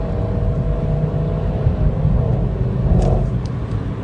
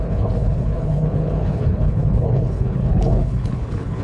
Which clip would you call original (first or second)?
first